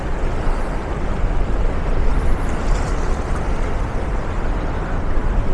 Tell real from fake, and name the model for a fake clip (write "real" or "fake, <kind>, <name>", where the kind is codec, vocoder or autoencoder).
real